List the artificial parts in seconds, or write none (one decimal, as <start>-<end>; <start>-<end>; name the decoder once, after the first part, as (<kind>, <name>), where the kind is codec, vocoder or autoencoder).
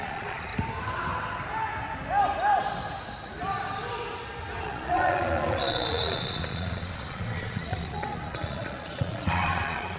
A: 0.0-0.5 (vocoder, Vocos); 4.6-10.0